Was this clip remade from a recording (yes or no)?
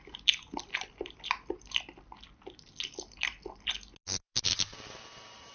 no